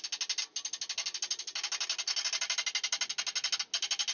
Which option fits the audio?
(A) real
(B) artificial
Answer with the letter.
A